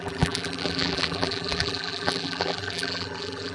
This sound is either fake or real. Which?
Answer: fake